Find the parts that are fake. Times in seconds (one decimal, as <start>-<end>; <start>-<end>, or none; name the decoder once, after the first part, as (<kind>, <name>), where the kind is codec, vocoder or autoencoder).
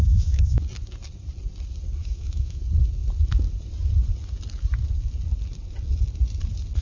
0.0-0.6 (autoencoder, DAC-VAE); 2.0-2.6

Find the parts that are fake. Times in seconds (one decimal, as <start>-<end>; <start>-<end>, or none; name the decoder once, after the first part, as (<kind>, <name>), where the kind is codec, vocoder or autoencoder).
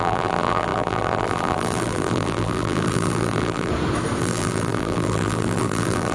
0.0-3.7 (vocoder, BigVGAN v2); 4.2-6.1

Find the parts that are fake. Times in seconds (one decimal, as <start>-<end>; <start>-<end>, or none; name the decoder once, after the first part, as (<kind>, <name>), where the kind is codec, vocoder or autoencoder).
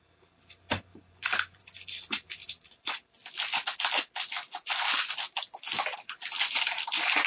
0.9-1.6 (vocoder, Vocos)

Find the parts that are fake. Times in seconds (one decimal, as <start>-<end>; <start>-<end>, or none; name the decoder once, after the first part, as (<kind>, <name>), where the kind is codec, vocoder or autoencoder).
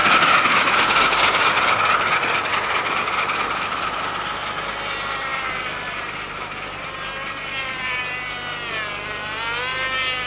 5.3-8.0 (vocoder, BigVGAN v2)